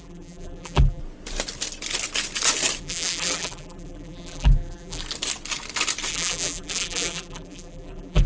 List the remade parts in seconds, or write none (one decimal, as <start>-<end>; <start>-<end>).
0.0-1.0; 2.8-5.0; 6.1-8.3